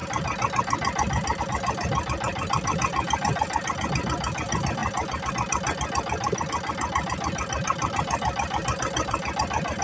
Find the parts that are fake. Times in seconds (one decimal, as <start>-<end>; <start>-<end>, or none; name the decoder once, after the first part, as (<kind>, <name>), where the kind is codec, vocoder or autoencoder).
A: 2.3-3.7 (vocoder, BigVGAN v2); 7.6-9.4